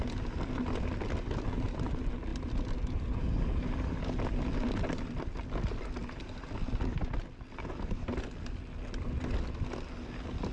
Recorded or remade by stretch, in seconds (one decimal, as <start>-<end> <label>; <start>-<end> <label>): 0.0-10.5 recorded